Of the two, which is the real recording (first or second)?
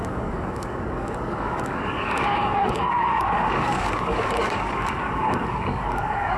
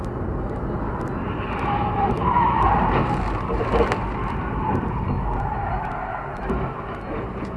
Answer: second